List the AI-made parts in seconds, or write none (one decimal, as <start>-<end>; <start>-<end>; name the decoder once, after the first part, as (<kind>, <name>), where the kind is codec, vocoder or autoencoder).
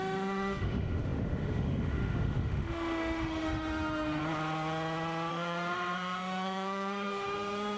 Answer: 0.0-4.2 (autoencoder, DAC-VAE); 5.3-7.8